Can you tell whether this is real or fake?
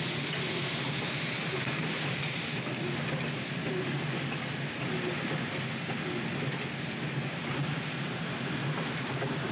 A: real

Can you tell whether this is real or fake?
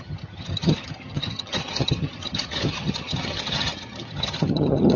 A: fake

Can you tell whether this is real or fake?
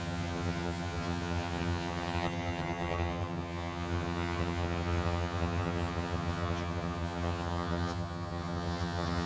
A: fake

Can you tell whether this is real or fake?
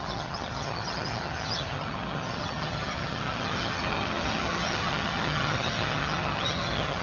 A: fake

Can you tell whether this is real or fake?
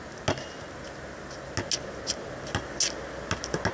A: real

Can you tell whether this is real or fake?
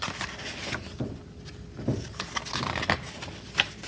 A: real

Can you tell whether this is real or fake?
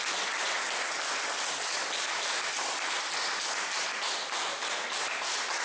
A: real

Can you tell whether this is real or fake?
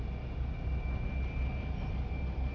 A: real